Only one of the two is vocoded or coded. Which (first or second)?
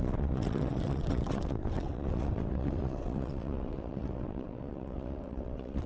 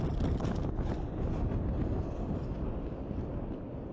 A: first